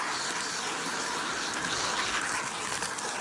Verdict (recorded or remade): recorded